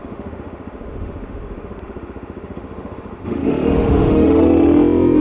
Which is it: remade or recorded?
remade